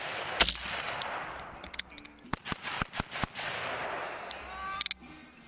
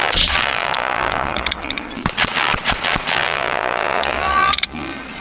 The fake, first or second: second